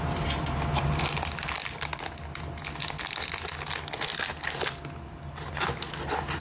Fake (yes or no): no